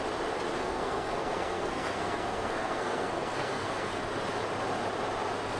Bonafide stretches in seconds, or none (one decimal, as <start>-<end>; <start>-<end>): 0.0-0.6; 4.0-5.6